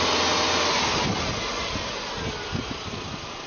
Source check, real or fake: real